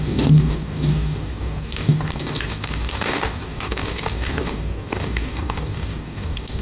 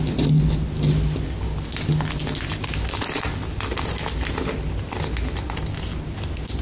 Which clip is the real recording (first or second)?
second